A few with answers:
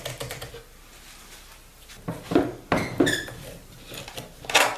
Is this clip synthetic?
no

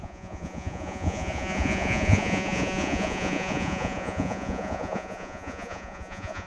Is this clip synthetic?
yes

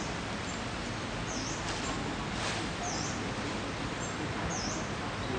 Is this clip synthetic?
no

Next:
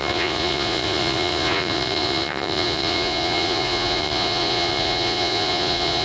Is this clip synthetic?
yes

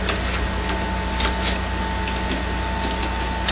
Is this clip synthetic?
no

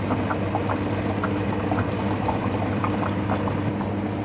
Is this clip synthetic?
no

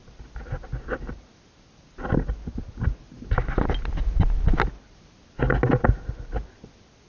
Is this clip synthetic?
no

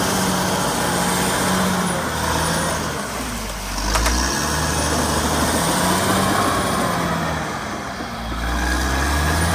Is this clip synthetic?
no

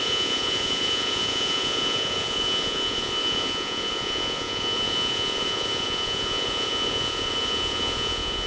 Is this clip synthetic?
yes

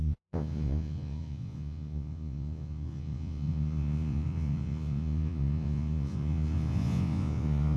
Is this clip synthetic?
yes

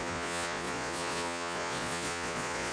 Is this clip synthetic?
yes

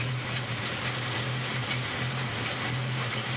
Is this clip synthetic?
no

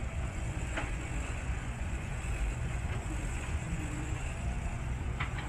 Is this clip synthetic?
yes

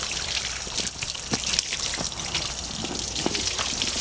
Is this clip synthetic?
no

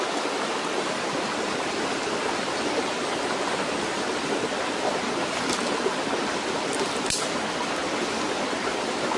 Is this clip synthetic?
no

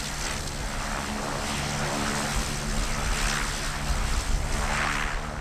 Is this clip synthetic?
no